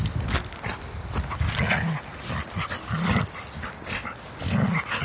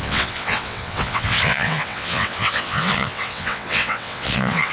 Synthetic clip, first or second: second